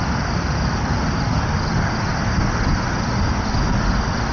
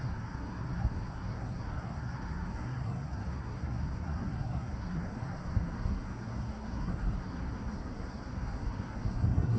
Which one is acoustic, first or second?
first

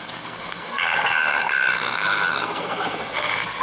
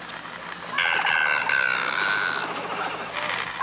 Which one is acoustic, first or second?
second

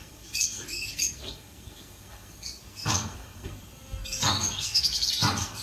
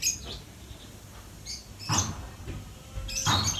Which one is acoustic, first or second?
second